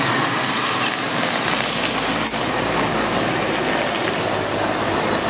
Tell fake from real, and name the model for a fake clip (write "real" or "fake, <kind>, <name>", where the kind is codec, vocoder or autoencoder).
real